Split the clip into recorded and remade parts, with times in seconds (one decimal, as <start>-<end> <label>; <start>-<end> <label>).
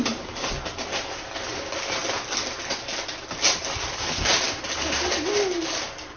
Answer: 0.0-6.2 recorded